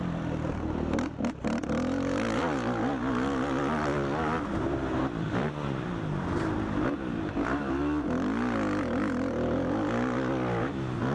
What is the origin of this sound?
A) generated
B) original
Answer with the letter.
B